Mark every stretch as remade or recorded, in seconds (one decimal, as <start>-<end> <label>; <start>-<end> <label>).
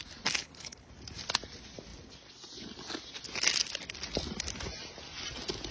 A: 0.0-0.4 recorded; 0.4-0.9 remade; 0.9-5.7 recorded